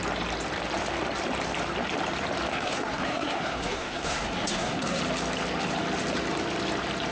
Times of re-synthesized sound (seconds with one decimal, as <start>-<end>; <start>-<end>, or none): 2.5-5.0